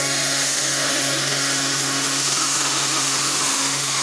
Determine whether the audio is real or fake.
fake